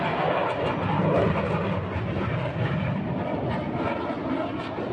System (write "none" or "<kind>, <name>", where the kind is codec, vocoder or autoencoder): none